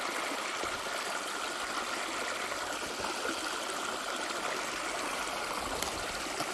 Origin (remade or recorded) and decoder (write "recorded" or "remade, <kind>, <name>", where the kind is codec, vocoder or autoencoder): recorded